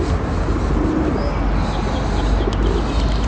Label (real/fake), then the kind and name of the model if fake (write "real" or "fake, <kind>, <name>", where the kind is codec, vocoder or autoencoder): real